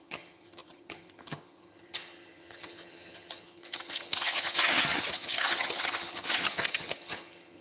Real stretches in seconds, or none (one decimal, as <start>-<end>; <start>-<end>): none